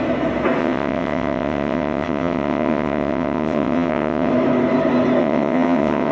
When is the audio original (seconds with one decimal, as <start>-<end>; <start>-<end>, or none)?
0.0-0.6; 4.3-5.2